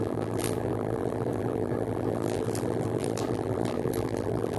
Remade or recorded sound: remade